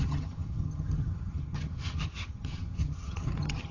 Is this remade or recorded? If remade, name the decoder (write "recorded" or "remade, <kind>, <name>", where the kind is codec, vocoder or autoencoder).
remade, vocoder, HiFi-GAN